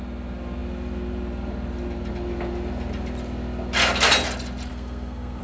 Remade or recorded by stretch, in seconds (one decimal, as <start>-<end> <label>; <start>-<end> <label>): 0.0-4.7 recorded; 4.7-5.4 remade